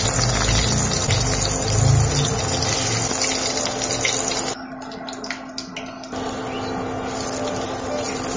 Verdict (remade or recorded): recorded